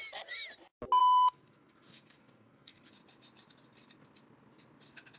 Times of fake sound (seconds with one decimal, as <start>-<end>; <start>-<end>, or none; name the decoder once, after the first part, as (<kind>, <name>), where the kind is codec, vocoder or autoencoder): 1.0-2.9 (codec, SNAC)